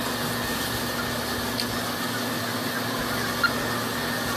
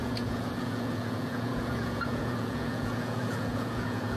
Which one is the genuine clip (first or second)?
first